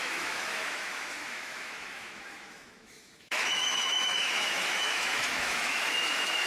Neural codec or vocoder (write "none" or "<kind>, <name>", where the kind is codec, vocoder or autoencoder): autoencoder, DAC-VAE